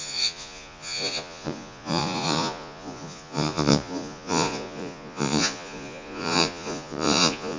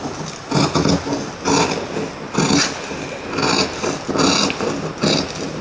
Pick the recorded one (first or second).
second